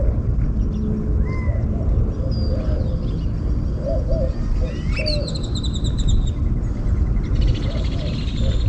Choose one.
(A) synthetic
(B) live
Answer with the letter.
B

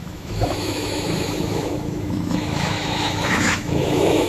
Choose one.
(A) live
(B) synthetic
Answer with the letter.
B